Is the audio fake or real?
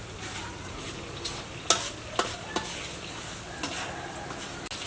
real